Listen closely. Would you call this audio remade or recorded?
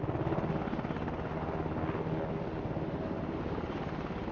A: recorded